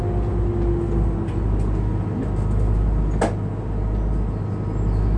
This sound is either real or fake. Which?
real